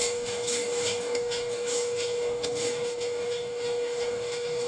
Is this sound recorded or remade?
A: remade